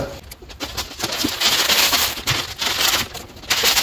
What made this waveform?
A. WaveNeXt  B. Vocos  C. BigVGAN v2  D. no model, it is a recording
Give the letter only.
D